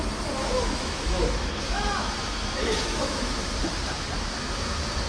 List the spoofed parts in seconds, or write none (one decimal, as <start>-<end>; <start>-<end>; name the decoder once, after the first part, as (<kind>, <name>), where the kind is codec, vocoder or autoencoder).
0.4-3.5 (autoencoder, DAC-VAE)

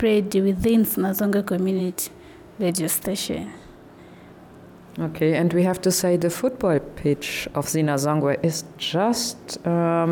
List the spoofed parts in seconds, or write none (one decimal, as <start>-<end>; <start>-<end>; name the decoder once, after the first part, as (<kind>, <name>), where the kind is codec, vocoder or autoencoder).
1.8-2.7 (autoencoder, DAC-VAE)

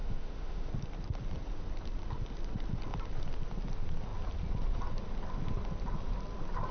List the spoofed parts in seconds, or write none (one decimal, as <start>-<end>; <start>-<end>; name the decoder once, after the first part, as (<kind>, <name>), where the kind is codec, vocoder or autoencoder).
0.0-0.7 (autoencoder, DAC-VAE)

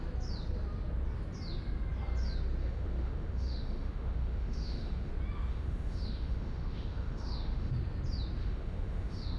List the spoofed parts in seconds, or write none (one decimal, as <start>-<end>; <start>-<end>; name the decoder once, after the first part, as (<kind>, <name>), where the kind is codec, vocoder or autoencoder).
2.6-5.1 (autoencoder, DAC-VAE); 5.5-7.7; 8.4-9.4

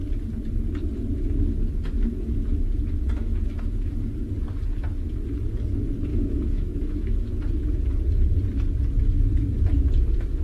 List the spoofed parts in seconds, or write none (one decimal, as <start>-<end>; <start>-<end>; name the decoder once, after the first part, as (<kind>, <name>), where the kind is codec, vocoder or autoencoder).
3.3-4.1 (autoencoder, DAC-VAE); 6.1-7.3